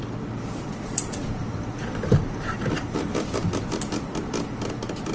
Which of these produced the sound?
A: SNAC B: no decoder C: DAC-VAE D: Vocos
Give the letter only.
B